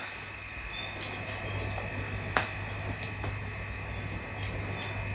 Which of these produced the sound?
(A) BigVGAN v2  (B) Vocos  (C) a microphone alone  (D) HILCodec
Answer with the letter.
C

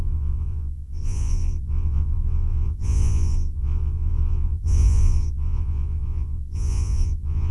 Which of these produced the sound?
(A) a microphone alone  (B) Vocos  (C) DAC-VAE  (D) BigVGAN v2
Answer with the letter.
B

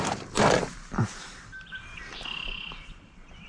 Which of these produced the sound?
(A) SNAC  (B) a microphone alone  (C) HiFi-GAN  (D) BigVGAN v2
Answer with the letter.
D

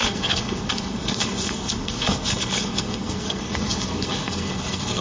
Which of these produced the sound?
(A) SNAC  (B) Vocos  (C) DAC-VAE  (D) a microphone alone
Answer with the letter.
A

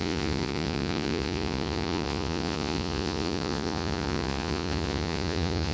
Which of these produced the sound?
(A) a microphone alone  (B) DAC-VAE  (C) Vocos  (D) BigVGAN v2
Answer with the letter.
C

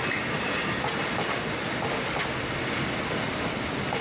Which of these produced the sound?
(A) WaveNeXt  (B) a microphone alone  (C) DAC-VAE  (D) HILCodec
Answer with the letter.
B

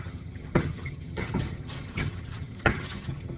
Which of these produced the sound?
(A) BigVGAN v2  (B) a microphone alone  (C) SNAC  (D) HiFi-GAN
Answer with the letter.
D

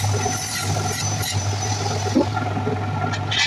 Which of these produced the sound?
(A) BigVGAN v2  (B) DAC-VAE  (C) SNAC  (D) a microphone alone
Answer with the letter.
D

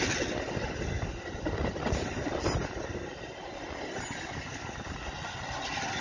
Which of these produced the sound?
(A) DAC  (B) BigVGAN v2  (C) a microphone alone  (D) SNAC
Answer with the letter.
C